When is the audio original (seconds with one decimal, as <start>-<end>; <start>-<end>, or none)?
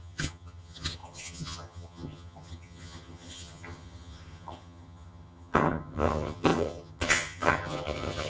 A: none